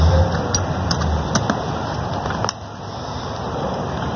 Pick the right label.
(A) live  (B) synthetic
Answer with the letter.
A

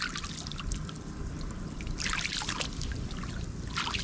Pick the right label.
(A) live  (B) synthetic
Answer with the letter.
A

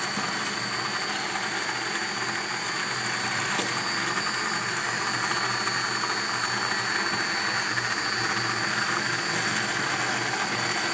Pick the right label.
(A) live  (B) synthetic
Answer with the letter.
A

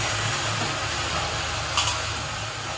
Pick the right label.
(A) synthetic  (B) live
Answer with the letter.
B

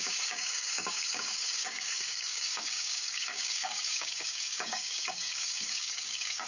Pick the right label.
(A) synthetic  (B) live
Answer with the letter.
A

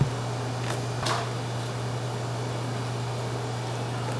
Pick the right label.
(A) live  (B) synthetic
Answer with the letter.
A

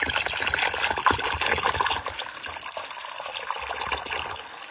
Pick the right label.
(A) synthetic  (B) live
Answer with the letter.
B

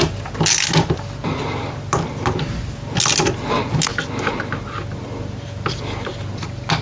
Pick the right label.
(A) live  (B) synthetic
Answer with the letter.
A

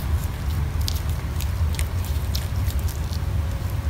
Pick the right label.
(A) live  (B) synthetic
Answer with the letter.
A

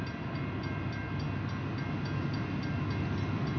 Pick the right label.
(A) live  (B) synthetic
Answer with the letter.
A